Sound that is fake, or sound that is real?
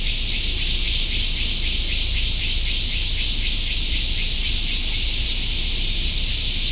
real